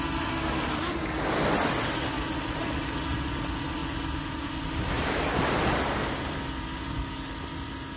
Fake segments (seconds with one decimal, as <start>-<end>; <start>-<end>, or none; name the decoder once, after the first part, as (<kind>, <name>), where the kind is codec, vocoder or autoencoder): none